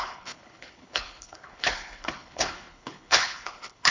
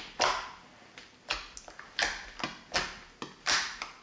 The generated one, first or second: first